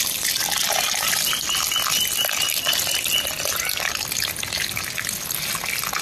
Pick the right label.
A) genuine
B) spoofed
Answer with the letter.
A